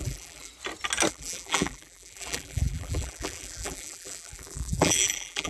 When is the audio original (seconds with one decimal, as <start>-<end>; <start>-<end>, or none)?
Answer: 0.5-1.1